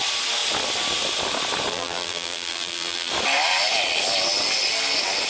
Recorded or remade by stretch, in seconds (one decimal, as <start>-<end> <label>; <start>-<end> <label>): 0.0-1.7 recorded; 1.7-3.1 remade; 3.1-5.3 recorded